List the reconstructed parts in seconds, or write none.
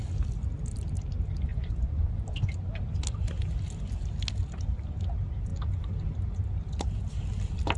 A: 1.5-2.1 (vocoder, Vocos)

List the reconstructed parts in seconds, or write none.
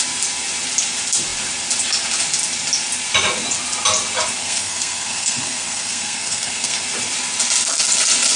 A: 4.4-6.8 (codec, SNAC)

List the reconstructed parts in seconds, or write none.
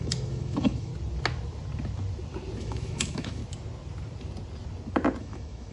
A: 0.0-0.9 (autoencoder, DAC-VAE); 2.6-3.4; 5.2-5.7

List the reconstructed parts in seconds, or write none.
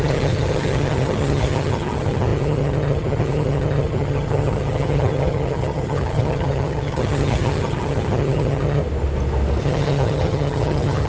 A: 0.0-8.8 (vocoder, HiFi-GAN); 9.6-11.1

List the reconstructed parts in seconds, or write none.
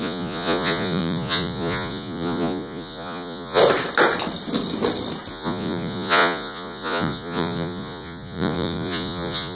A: 0.0-3.6 (vocoder, Vocos); 5.3-9.6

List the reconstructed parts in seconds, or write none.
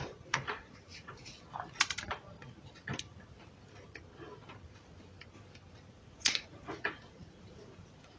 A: 0.0-1.3 (vocoder, Vocos); 5.8-8.2